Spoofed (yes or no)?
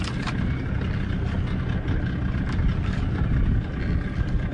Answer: no